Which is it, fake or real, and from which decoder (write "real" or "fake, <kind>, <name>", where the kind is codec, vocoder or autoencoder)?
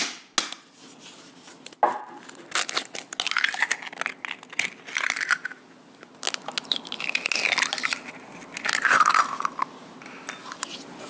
real